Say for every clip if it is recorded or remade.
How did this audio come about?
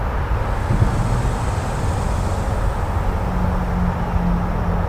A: recorded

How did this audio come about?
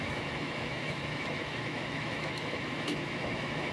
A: remade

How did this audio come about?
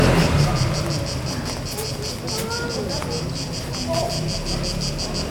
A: recorded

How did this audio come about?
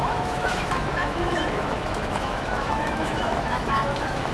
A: remade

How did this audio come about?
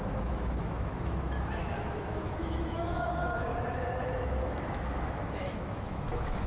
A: remade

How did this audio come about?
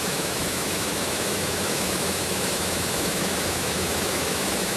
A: remade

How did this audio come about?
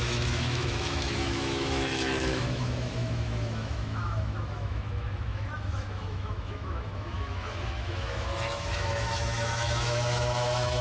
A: remade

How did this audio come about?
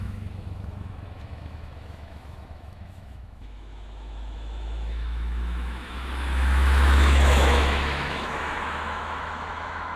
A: remade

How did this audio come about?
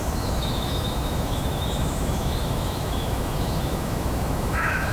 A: remade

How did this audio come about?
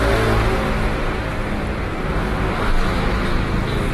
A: recorded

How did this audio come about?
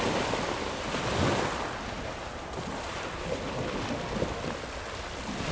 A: recorded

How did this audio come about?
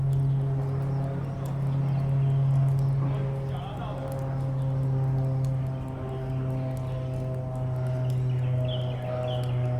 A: recorded